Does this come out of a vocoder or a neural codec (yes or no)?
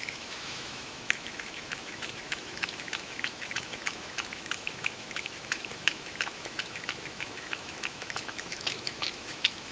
yes